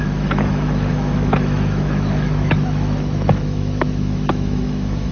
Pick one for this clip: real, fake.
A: fake